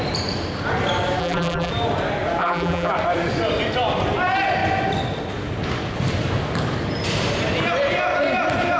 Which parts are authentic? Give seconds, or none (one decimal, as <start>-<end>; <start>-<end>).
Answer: 0.0-1.2; 1.7-2.4; 2.9-8.8